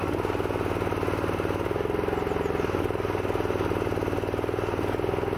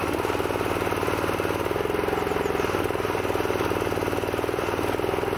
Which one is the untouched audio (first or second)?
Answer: first